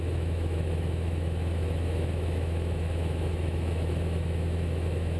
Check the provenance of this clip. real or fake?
fake